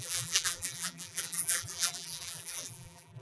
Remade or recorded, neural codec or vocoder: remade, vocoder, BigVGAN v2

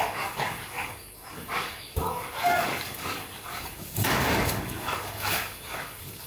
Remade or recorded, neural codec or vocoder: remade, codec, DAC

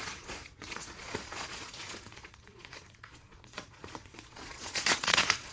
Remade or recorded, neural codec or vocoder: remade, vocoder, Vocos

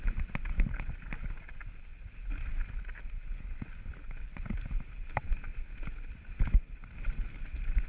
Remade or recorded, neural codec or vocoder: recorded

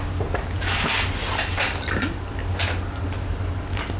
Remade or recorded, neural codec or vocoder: recorded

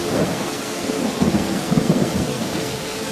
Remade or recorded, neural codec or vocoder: remade, codec, SNAC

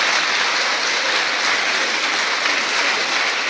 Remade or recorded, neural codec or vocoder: recorded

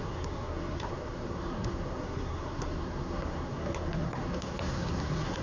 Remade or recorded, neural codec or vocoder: remade, codec, SNAC